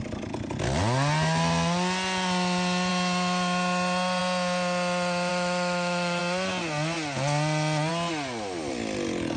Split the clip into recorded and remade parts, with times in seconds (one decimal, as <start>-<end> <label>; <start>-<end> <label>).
0.0-5.3 recorded; 5.3-6.2 remade; 6.2-9.4 recorded